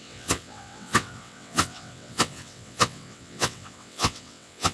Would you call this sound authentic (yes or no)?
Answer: no